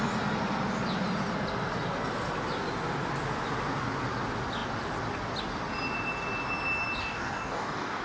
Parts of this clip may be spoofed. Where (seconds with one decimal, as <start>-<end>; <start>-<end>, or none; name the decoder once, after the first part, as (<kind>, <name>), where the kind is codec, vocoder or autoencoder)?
7.0-8.0 (codec, DAC)